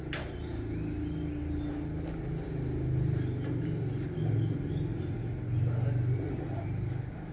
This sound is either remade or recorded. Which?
recorded